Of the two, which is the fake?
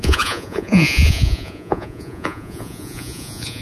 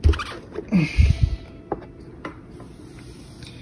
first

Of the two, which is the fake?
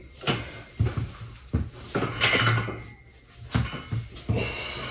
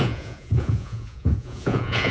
second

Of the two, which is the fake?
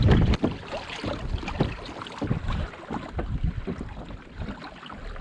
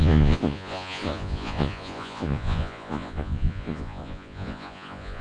second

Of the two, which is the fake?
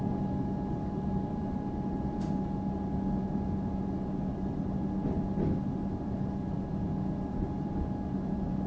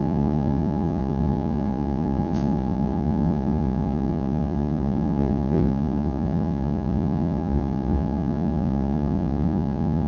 second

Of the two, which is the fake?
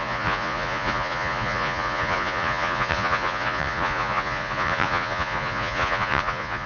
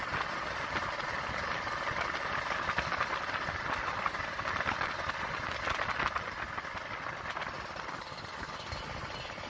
first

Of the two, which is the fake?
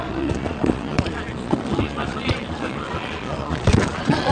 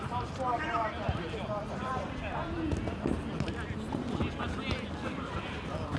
first